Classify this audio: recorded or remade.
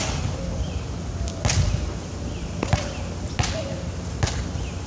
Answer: recorded